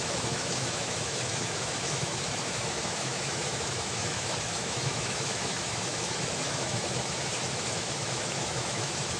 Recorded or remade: remade